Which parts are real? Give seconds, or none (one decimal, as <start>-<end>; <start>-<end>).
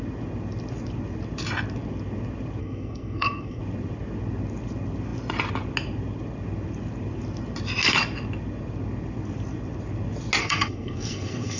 0.0-2.6; 3.6-10.4